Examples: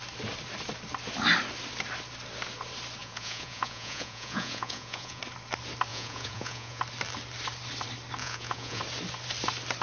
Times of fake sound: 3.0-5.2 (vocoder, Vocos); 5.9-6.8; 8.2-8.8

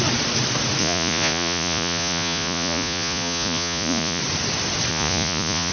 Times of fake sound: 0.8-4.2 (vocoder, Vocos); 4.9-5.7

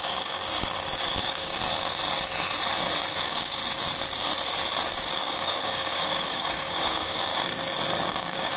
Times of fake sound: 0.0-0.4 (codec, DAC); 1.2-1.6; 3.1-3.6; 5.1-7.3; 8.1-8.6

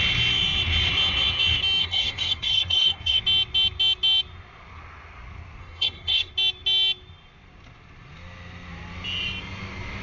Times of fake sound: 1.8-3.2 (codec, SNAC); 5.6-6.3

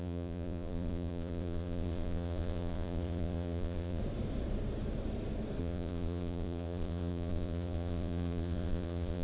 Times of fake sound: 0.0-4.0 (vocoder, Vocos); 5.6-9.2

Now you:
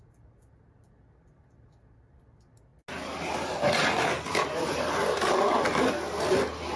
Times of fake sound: none

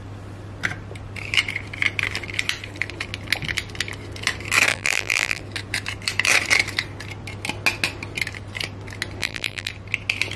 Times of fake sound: 4.7-5.4 (vocoder, BigVGAN v2); 9.2-9.7